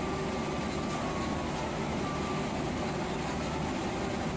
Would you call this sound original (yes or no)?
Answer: yes